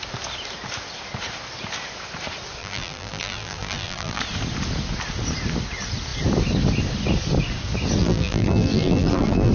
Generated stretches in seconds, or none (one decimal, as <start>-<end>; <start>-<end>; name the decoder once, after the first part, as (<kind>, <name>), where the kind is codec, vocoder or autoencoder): 2.6-4.2 (vocoder, BigVGAN v2); 8.0-9.5